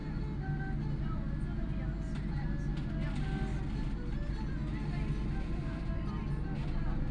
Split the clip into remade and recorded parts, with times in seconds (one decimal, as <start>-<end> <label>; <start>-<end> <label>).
0.0-7.1 recorded